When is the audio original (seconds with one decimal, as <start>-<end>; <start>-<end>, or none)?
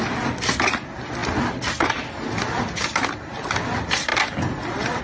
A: 0.0-5.0